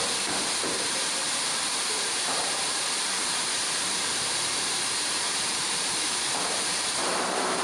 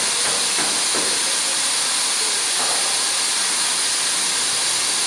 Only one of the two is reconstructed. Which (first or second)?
first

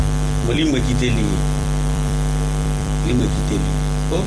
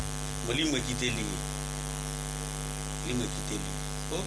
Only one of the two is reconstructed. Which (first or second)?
first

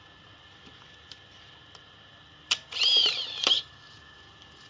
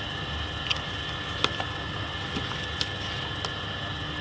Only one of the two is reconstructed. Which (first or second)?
first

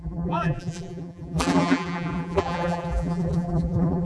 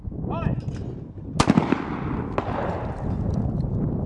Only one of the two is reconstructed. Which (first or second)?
first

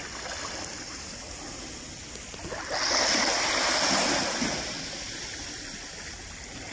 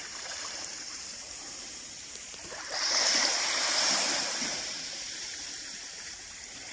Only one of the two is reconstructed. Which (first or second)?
second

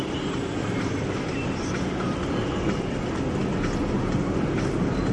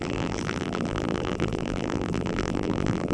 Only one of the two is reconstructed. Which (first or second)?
second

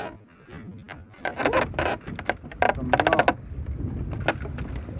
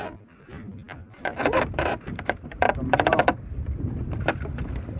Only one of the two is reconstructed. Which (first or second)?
second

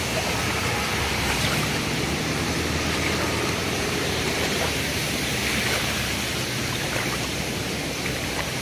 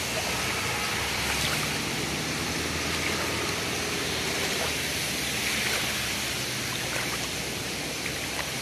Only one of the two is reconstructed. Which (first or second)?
first